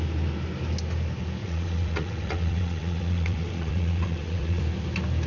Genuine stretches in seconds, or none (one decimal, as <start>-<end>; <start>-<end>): 0.0-1.4; 4.6-5.3